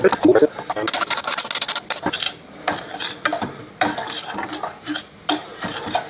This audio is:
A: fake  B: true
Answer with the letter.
B